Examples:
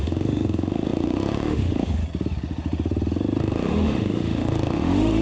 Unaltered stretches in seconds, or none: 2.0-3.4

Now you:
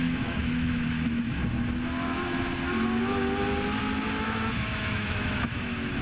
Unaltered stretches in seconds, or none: 1.4-4.2

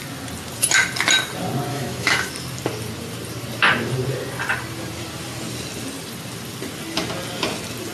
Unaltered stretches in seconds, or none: 0.0-1.7; 2.3-7.9

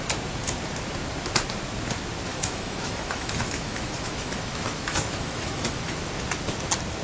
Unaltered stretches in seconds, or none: 0.0-2.3; 6.0-7.0